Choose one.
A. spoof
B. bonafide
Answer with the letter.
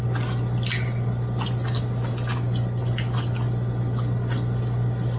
B